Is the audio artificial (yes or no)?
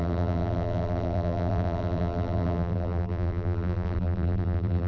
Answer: yes